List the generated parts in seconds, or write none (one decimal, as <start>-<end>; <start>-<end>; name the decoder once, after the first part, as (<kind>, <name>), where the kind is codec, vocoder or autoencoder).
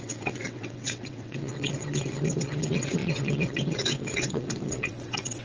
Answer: 0.0-5.4 (vocoder, WaveNeXt)